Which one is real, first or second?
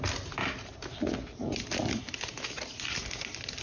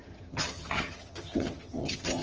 first